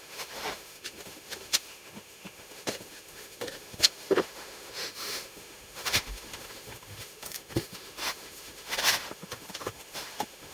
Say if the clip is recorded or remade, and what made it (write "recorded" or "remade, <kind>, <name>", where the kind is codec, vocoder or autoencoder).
remade, autoencoder, DAC-VAE